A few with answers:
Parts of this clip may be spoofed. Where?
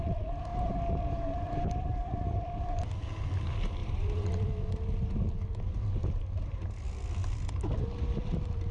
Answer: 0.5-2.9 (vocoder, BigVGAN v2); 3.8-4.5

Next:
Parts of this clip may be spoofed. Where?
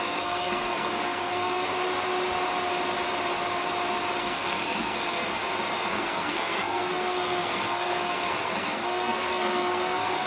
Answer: 0.0-1.7 (codec, SNAC); 4.2-5.2; 5.9-10.3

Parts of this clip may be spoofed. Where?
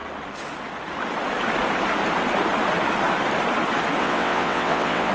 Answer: 4.0-5.1 (vocoder, WaveNeXt)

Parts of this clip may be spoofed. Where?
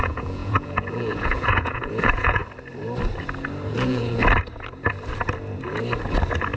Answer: 0.0-2.4 (vocoder, Vocos); 3.7-4.2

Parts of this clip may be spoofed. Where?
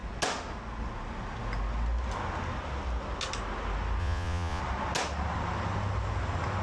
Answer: 4.0-4.6 (vocoder, Vocos)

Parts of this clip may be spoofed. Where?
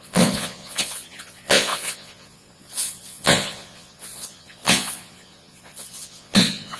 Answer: 0.0-6.8 (vocoder, Vocos)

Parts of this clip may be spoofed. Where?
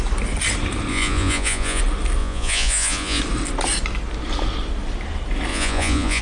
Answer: 0.9-1.8 (vocoder, Vocos); 2.2-3.2; 5.5-6.2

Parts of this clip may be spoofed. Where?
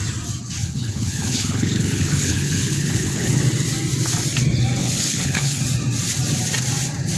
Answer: 0.6-3.4 (codec, HILCodec); 4.8-5.6